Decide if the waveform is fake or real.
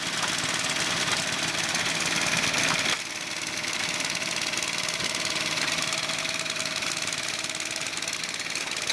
real